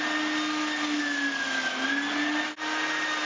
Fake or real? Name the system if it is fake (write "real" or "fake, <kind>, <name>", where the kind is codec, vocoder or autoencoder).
real